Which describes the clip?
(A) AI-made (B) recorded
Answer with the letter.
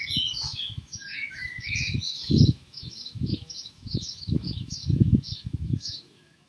A